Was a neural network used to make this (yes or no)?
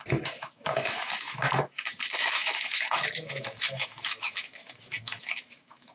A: yes